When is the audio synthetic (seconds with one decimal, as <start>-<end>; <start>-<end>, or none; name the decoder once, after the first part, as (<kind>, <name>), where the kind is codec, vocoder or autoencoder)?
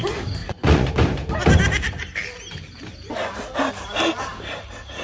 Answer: 0.4-0.9 (vocoder, Vocos)